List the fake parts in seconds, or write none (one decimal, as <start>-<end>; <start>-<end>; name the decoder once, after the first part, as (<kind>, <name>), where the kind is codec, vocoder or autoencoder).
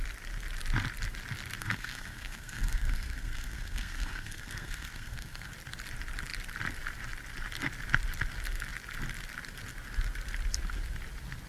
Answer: 1.6-5.5 (codec, SNAC)